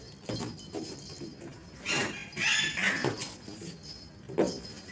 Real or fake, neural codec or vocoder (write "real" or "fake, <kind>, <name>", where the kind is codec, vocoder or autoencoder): real